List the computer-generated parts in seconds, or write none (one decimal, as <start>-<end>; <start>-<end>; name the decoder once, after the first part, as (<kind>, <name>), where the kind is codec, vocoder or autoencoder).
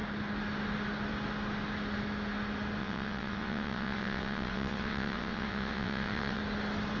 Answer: 2.8-6.4 (vocoder, WaveNeXt)